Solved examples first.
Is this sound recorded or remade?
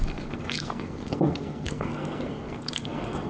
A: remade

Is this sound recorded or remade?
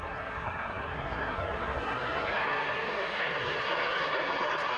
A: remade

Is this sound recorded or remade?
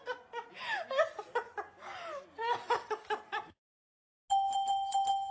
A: recorded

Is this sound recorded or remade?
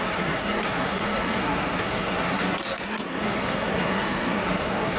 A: remade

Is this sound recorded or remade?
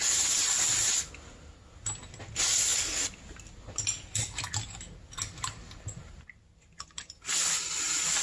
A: recorded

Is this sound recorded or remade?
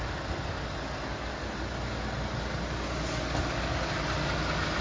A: recorded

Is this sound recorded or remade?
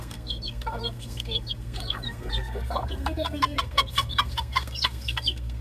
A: remade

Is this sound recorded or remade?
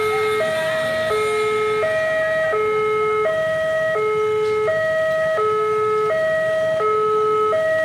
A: recorded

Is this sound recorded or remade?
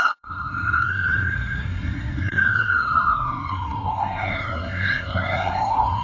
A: remade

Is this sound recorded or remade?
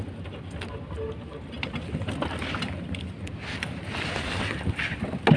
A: recorded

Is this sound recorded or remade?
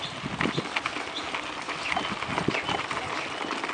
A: recorded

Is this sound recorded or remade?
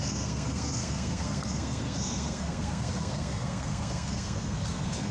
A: remade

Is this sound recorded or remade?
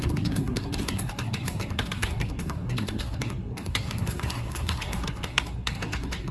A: remade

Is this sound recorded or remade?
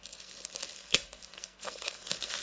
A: remade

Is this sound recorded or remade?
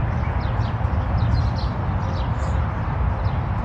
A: recorded